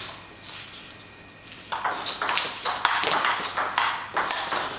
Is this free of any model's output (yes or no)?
yes